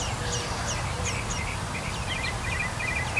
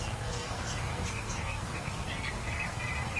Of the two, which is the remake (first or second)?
second